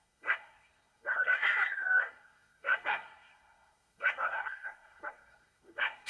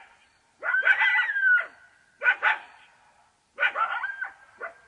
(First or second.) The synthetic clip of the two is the first